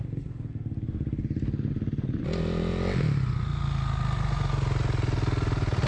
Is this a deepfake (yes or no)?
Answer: no